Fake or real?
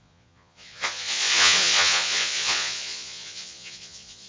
fake